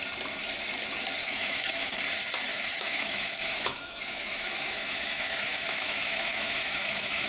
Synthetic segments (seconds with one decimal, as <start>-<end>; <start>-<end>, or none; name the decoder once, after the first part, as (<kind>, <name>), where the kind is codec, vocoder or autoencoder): 1.2-2.0 (autoencoder, DAC-VAE); 2.5-7.3